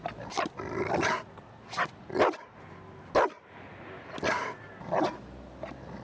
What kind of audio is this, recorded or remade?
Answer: recorded